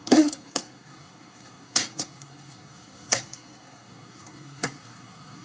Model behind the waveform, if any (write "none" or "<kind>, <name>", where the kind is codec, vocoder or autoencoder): codec, SNAC